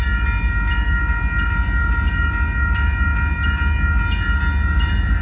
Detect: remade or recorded recorded